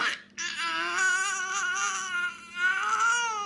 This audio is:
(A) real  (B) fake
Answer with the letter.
A